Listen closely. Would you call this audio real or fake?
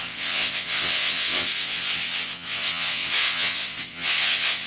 fake